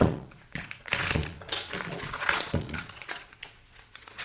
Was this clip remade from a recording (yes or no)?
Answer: yes